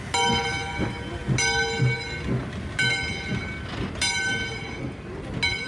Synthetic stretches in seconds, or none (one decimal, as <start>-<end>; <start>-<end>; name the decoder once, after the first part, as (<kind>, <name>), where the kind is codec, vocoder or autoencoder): none